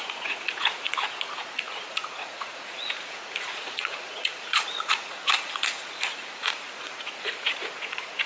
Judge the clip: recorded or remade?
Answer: remade